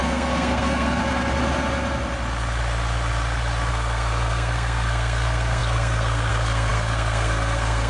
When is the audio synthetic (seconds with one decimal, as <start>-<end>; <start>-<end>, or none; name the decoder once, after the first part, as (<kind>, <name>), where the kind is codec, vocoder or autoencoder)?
0.0-1.0 (codec, SNAC); 3.7-7.9